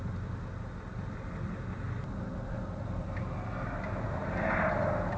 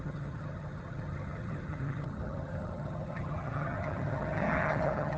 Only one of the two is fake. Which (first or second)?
second